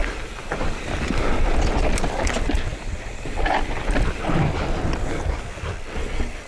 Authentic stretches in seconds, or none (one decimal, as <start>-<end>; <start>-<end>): 0.0-6.5